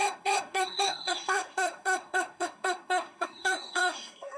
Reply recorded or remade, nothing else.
remade